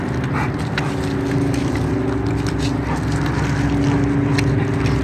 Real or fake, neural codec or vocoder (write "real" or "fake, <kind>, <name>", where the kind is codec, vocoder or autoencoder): real